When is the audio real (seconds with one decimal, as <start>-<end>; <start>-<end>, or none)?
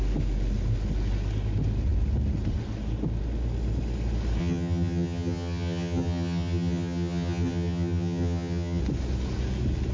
0.0-4.4; 8.8-9.9